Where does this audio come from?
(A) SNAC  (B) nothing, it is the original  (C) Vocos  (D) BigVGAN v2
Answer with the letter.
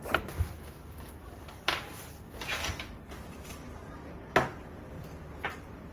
B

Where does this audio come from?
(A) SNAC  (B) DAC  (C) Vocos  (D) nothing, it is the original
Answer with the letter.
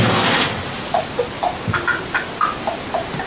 D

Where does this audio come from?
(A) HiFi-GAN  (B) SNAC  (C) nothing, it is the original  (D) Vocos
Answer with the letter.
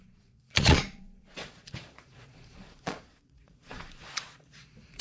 D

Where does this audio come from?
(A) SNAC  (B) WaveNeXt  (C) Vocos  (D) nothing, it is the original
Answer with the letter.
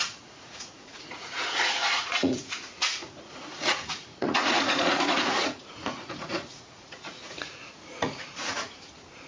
C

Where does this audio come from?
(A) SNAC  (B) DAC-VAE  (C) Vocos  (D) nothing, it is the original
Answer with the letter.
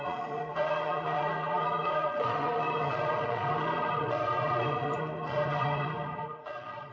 C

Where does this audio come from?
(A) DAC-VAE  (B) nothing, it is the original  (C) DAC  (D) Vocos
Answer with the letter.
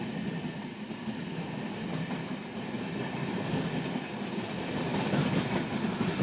B